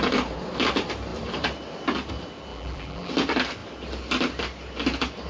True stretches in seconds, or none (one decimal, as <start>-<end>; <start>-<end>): 0.0-2.5; 3.1-5.3